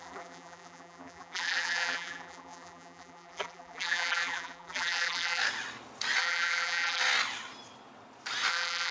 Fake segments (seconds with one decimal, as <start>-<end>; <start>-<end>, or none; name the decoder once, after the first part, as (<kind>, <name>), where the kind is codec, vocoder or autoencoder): 0.0-5.4 (vocoder, BigVGAN v2); 6.2-7.0; 8.5-8.9